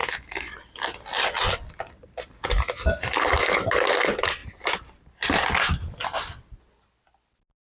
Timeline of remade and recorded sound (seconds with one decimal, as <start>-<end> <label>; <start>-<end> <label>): 0.0-7.7 recorded